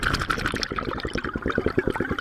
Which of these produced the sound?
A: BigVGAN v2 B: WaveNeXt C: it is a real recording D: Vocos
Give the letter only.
C